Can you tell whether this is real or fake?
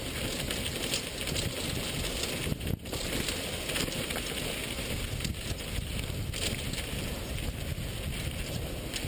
real